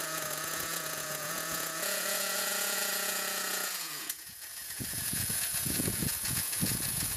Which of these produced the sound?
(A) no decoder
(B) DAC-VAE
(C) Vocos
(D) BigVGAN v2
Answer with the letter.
C